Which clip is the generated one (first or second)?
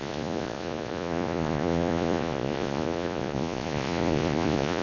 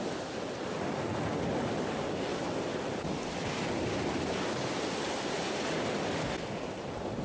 first